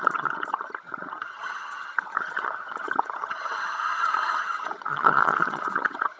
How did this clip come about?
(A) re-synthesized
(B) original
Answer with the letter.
A